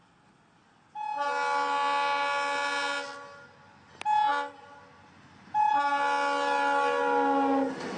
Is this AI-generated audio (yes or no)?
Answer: no